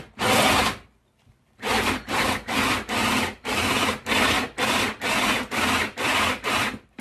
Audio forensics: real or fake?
real